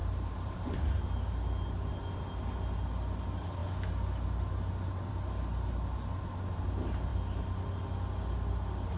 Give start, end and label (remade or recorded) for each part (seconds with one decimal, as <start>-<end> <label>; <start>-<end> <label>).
0.0-1.1 remade; 1.1-9.0 recorded